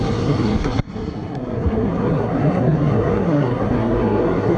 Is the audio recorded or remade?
remade